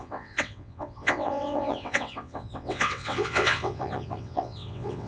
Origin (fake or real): fake